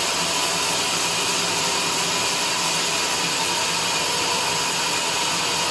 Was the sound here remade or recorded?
recorded